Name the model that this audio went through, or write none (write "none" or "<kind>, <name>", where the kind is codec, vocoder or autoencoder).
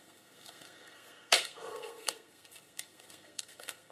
codec, SNAC